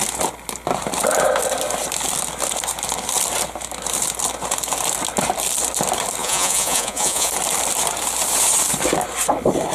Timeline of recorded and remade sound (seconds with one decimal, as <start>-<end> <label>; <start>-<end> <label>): 0.0-6.2 recorded; 6.2-7.3 remade; 7.3-9.7 recorded